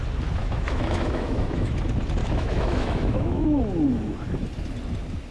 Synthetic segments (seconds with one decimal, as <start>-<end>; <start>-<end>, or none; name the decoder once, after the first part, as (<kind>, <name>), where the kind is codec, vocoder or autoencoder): 0.4-1.7 (autoencoder, DAC-VAE); 2.2-3.6